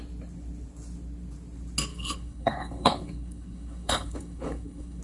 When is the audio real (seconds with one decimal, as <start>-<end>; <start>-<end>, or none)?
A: 0.0-1.9